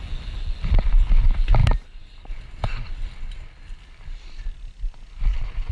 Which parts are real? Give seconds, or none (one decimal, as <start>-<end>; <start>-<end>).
0.0-1.6; 2.3-5.7